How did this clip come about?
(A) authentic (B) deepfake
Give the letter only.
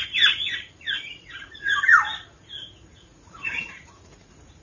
B